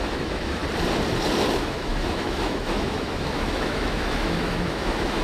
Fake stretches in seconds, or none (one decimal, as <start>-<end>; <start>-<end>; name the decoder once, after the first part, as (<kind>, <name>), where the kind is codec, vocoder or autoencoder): 0.0-0.6 (autoencoder, DAC-VAE); 1.5-5.2